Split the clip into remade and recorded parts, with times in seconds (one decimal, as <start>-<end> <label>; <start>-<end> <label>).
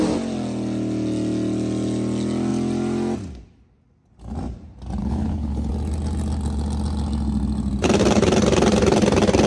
0.0-5.0 recorded; 5.0-5.7 remade; 5.7-9.5 recorded